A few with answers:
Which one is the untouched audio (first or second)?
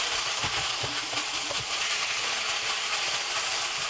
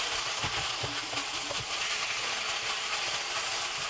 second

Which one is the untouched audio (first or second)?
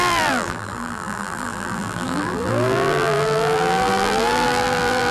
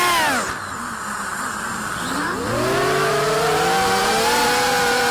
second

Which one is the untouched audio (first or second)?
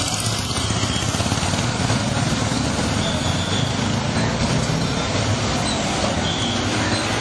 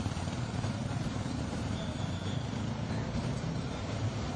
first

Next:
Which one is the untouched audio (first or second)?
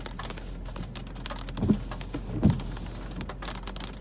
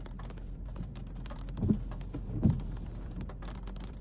first